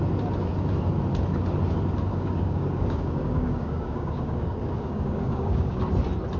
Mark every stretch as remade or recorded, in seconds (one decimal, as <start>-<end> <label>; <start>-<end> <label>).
0.0-2.1 recorded; 2.1-5.9 remade; 5.9-6.4 recorded